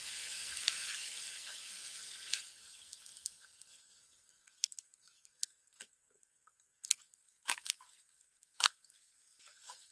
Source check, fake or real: fake